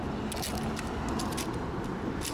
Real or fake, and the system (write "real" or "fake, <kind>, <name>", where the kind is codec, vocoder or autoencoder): real